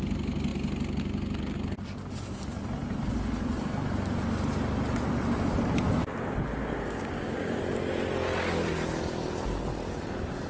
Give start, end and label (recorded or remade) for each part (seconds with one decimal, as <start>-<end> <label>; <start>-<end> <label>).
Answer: 0.0-6.6 recorded; 6.6-7.6 remade; 7.6-10.5 recorded